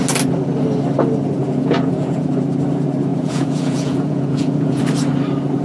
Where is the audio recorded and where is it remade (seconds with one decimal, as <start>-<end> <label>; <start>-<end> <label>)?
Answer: 0.0-1.4 recorded; 1.4-2.3 remade; 2.3-3.1 recorded; 3.1-4.8 remade; 4.8-5.6 recorded